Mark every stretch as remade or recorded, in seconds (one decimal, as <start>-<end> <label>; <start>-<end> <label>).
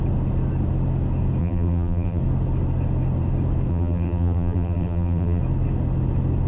0.0-1.4 recorded; 1.4-2.2 remade; 2.2-3.7 recorded; 3.7-5.4 remade; 5.4-6.5 recorded